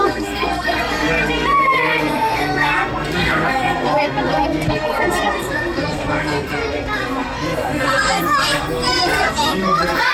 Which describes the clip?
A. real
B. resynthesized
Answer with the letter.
B